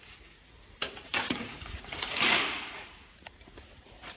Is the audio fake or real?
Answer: fake